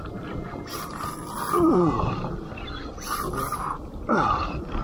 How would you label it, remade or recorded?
recorded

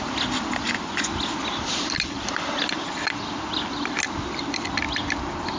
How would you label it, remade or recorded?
recorded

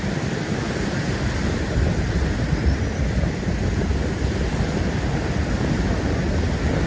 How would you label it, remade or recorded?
recorded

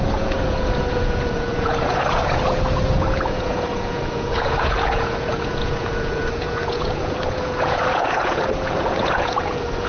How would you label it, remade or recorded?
remade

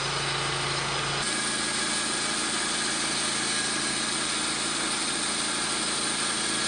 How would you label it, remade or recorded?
recorded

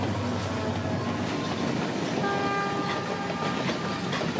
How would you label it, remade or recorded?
recorded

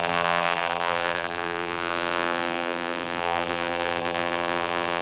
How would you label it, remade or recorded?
remade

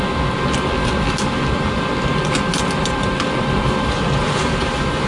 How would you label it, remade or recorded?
recorded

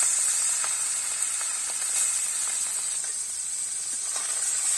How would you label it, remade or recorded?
recorded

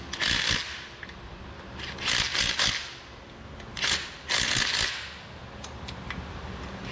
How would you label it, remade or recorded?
recorded